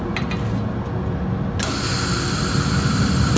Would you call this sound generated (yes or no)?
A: no